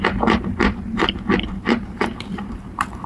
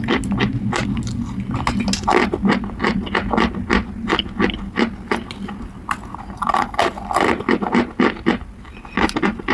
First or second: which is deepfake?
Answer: first